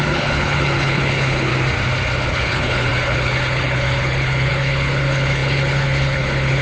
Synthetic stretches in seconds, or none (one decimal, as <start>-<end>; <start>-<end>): 0.0-1.5; 2.2-6.6